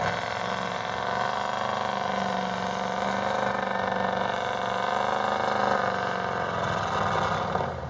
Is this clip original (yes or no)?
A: yes